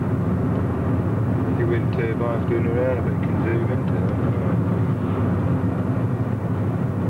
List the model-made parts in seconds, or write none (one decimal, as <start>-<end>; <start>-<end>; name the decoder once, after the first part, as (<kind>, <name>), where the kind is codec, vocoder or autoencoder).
none